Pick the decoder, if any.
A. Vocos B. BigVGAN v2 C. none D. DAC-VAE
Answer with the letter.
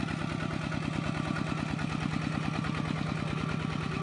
C